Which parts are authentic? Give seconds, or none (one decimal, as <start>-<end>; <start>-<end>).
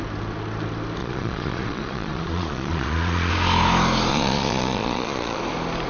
0.0-1.0; 3.3-4.1; 5.4-5.9